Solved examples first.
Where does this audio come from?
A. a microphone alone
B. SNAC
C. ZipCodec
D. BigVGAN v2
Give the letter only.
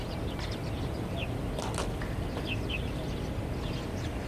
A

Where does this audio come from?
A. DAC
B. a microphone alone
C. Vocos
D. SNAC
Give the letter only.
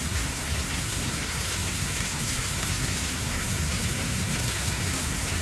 D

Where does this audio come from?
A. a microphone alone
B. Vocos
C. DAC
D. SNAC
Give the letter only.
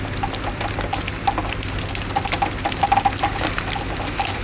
A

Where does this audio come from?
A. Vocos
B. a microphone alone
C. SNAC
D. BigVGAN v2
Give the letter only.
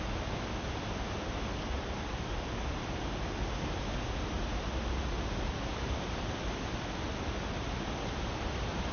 B